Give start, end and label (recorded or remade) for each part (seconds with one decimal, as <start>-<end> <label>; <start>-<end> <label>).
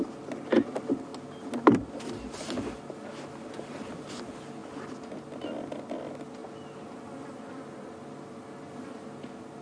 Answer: 0.0-9.6 recorded